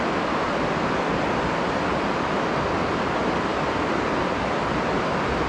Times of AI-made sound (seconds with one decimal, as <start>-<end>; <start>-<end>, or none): none